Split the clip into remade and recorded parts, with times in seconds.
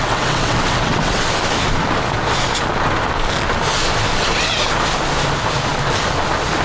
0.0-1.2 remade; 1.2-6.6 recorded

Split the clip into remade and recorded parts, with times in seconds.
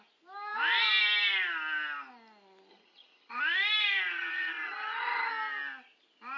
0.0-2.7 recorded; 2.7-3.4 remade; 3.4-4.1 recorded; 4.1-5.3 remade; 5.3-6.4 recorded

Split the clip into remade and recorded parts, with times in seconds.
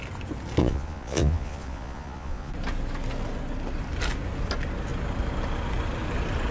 0.0-0.6 recorded; 0.6-2.5 remade; 2.5-6.5 recorded